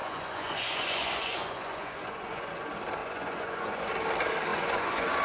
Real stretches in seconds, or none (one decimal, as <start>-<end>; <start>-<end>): 2.5-3.0; 3.9-4.5

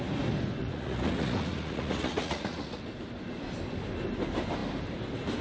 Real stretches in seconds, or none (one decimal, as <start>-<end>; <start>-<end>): 0.0-0.6; 2.8-5.4

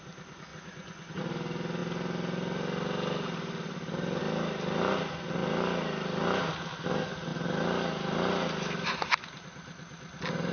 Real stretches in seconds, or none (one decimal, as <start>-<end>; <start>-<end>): 0.0-0.5; 1.2-10.5

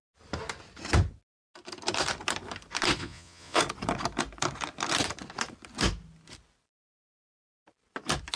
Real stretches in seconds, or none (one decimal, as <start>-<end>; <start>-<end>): 0.0-3.0; 3.6-8.4

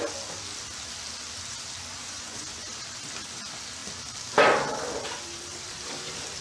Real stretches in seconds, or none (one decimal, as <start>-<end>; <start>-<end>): 0.0-2.0; 2.7-6.4

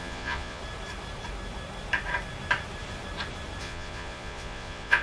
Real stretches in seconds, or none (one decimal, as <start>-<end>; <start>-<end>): 0.6-3.6

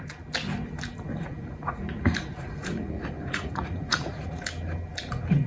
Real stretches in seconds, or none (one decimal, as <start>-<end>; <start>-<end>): 0.0-1.1; 4.4-5.5